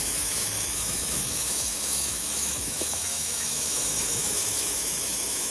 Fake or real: fake